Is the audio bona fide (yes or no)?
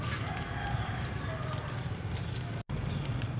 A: yes